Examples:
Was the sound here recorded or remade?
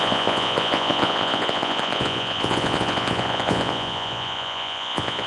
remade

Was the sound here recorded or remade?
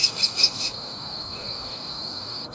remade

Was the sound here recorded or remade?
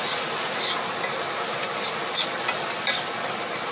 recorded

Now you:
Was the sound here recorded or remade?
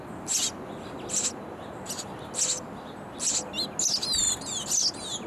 recorded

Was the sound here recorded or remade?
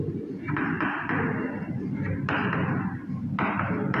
recorded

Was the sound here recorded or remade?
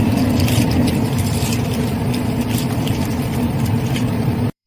remade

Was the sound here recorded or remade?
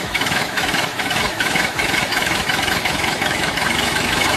remade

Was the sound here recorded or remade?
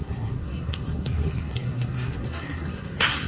remade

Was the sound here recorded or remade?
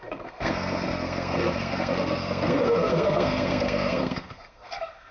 remade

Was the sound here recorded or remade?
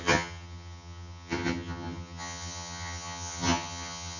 remade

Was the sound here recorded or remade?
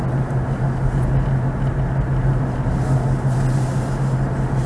recorded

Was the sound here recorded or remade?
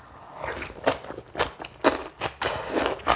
recorded